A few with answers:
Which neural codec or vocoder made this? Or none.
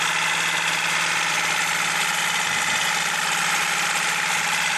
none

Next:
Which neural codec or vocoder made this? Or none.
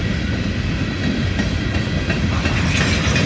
none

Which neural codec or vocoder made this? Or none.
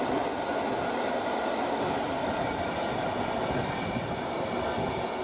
vocoder, BigVGAN v2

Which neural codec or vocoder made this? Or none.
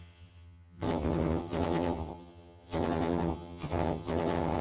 vocoder, HiFi-GAN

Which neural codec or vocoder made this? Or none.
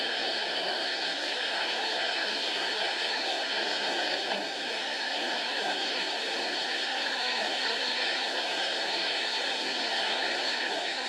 codec, SNAC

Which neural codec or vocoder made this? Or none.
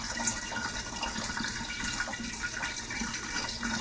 none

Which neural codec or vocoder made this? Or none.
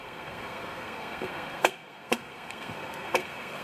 codec, SNAC